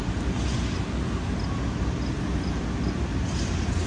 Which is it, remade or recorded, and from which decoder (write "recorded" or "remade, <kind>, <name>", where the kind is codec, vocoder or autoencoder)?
recorded